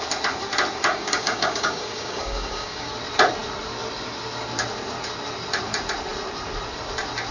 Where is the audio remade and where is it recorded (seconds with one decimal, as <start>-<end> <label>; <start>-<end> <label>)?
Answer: 0.0-0.9 recorded; 0.9-2.9 remade; 2.9-7.3 recorded